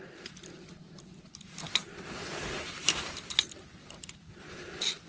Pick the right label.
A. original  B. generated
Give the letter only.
A